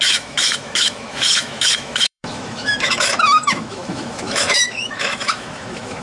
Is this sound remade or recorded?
remade